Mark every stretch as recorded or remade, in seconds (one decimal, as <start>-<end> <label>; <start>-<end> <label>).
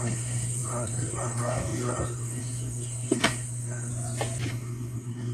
0.0-3.9 remade; 3.9-4.5 recorded; 4.5-5.3 remade